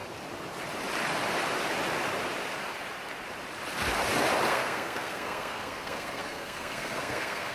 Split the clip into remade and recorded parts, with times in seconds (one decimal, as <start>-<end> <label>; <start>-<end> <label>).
0.0-4.5 recorded; 4.5-7.5 remade